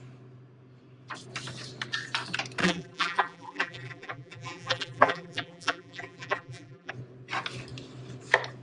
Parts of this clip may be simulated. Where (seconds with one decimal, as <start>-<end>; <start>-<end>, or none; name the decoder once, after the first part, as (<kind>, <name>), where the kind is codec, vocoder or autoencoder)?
2.6-6.9 (vocoder, BigVGAN v2)